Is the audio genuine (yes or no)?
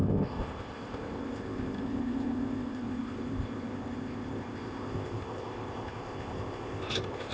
no